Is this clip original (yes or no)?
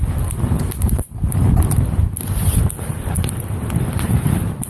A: yes